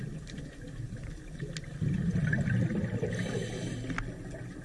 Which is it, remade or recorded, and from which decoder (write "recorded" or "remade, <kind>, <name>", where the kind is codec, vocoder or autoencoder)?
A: recorded